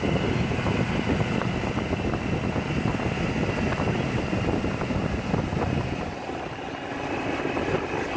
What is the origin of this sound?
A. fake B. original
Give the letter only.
B